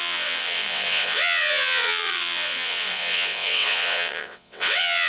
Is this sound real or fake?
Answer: fake